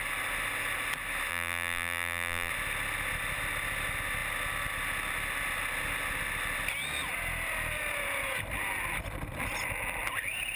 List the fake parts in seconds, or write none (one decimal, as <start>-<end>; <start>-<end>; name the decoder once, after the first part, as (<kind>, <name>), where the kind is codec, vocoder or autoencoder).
1.3-2.5 (vocoder, BigVGAN v2)